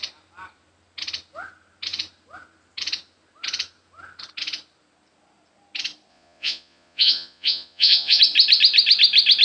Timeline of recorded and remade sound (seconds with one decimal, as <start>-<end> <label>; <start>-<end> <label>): 0.0-6.1 recorded; 6.1-8.2 remade; 8.2-9.4 recorded